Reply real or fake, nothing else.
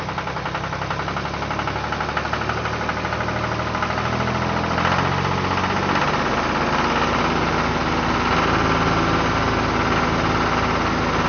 real